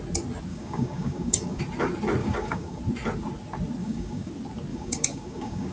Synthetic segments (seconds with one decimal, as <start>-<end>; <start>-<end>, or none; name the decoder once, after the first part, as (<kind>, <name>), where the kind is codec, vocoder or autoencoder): 0.5-1.6 (codec, DAC); 2.2-2.8; 3.8-4.3; 4.7-5.7

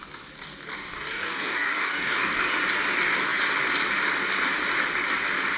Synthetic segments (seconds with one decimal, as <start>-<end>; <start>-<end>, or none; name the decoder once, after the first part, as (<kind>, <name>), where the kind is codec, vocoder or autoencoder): 0.8-2.4 (codec, DAC)

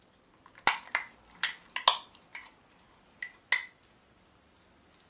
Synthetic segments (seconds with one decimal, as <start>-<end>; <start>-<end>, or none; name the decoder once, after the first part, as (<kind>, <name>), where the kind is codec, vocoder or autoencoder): none

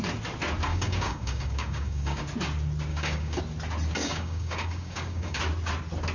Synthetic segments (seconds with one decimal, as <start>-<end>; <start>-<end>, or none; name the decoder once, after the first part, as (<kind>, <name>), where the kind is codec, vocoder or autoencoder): 0.7-2.2 (codec, DAC); 2.9-3.4; 4.0-5.4

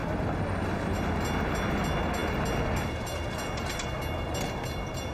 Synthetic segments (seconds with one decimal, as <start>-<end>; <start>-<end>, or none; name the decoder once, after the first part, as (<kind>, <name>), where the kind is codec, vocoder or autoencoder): none

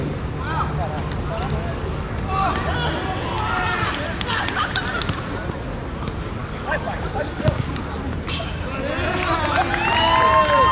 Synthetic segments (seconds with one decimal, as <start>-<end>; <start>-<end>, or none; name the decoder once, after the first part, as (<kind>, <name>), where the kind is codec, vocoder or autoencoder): 1.7-2.3 (codec, DAC); 6.4-7.8

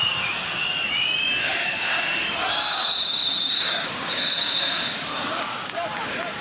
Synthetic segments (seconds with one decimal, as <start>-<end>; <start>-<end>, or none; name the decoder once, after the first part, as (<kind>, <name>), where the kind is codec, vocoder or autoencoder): 0.0-6.4 (codec, DAC)